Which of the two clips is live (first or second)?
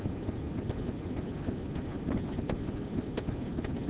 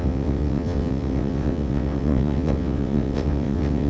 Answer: first